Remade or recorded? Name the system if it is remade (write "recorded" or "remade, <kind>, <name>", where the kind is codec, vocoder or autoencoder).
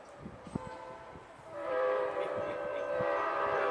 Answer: remade, vocoder, BigVGAN v2